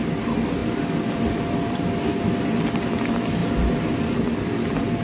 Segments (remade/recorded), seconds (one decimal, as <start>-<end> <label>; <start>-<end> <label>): 0.0-0.6 recorded; 0.6-1.9 remade; 1.9-5.0 recorded